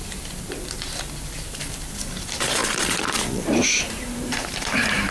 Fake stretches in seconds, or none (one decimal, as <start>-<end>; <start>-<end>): 1.9-2.6; 3.7-5.1